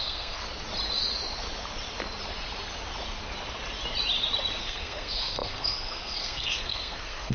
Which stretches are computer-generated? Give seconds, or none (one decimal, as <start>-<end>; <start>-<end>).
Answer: 0.0-0.4; 4.6-7.3